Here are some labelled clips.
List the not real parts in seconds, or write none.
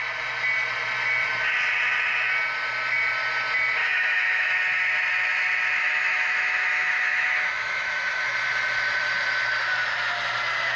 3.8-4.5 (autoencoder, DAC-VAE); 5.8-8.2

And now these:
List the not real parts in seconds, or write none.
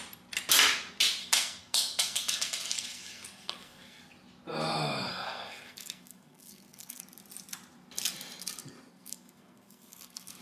1.2-4.0 (codec, SNAC); 5.1-7.0; 8.9-10.4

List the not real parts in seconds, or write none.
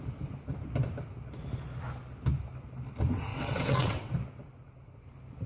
3.3-4.1 (vocoder, WaveNeXt)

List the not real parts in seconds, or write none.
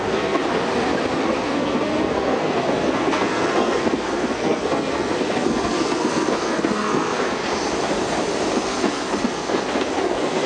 0.0-0.4 (codec, SNAC); 1.2-7.4; 8.5-10.5